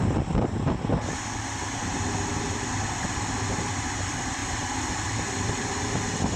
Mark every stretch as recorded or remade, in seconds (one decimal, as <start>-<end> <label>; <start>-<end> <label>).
0.0-0.9 remade; 0.9-3.7 recorded; 3.7-6.4 remade